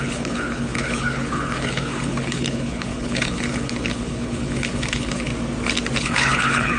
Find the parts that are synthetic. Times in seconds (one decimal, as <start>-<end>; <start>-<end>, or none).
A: 0.0-5.3; 6.0-6.8